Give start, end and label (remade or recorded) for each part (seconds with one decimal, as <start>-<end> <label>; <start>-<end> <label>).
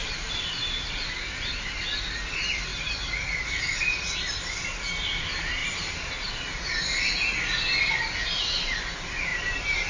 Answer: 0.0-1.0 remade; 1.0-2.7 recorded; 2.7-3.6 remade; 3.6-5.6 recorded; 5.6-6.3 remade; 6.3-9.9 recorded